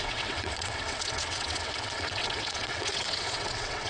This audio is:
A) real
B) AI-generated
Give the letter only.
B